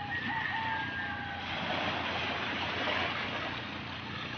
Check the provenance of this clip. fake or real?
real